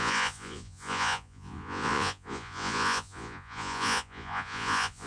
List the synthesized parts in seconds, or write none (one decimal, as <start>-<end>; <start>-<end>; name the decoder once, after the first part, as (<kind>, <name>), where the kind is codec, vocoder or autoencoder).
0.0-5.1 (vocoder, Vocos)